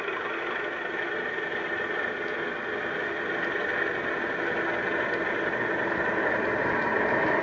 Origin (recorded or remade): recorded